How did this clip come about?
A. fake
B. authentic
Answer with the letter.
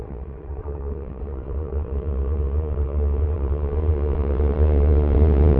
A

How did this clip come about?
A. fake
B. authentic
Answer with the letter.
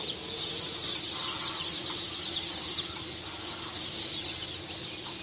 B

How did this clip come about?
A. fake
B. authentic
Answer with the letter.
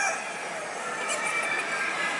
B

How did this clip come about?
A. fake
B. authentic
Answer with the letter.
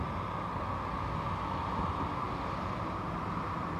B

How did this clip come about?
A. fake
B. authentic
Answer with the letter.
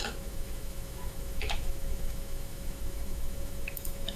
A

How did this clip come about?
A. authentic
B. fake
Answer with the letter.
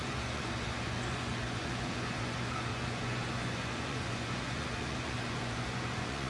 B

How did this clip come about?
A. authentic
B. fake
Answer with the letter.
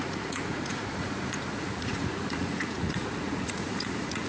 B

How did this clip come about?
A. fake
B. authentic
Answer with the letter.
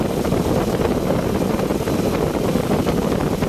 B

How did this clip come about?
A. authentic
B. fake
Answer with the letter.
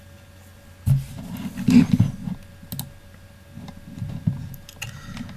A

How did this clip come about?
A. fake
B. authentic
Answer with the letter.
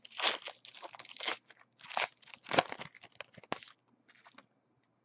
B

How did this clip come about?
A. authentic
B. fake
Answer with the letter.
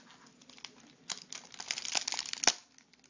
A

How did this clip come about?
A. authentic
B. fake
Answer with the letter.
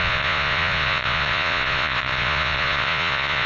B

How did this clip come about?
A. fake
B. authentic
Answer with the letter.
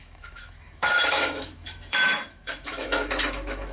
A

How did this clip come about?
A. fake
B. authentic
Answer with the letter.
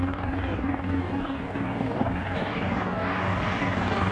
A